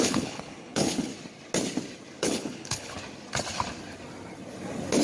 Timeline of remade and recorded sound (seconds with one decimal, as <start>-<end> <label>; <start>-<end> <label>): 0.0-1.1 remade; 1.1-2.2 recorded; 2.2-3.0 remade; 3.0-5.0 recorded